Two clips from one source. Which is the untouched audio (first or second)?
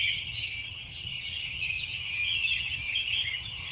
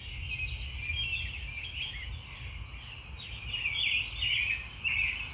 second